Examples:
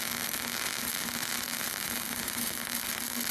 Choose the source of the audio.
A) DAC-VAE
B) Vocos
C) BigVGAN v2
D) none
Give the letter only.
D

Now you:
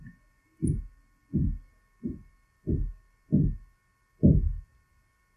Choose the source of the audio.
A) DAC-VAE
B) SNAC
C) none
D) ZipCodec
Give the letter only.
C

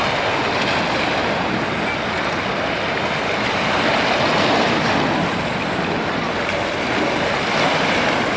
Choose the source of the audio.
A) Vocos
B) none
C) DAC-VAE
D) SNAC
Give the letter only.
B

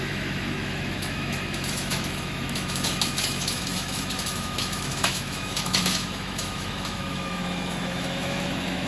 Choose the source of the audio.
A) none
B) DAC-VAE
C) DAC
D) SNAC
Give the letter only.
B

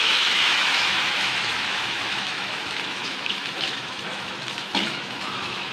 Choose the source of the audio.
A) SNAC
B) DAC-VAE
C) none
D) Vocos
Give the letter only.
B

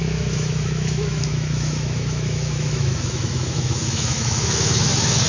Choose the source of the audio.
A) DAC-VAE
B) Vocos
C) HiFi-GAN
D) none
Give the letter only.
A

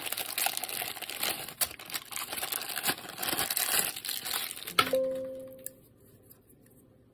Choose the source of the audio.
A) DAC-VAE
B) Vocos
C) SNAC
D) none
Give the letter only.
D